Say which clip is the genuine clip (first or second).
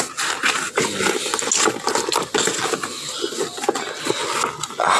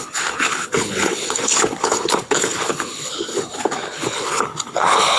first